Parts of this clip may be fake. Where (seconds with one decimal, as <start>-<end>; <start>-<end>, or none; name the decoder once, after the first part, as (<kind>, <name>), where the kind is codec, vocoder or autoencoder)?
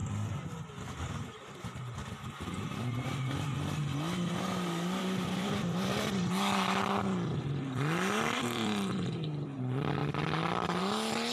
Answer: 1.0-3.8 (vocoder, BigVGAN v2); 5.0-11.3